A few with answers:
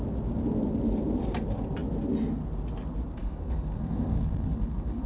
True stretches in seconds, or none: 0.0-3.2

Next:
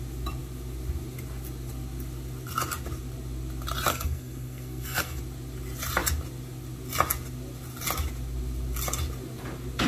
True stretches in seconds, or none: 0.0-3.9; 5.2-9.9

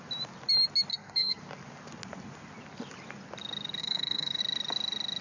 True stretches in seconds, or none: 0.0-0.9; 1.4-3.8; 4.4-5.2

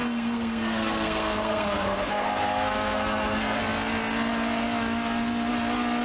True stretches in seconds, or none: 3.6-6.0

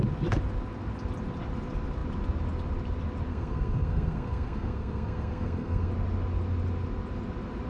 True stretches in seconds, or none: 0.0-3.3; 5.9-7.7

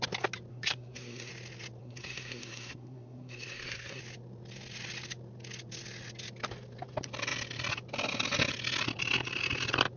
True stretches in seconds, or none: 0.0-0.5; 1.3-1.8; 4.0-10.0